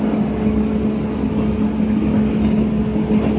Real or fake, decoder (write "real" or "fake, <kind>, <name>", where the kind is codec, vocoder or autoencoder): real